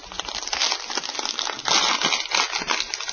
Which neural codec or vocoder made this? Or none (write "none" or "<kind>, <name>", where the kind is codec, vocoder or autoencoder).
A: none